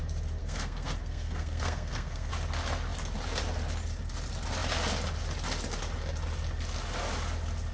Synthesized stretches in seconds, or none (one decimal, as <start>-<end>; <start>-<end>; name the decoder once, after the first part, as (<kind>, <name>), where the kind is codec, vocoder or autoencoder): 0.4-2.3 (codec, SNAC)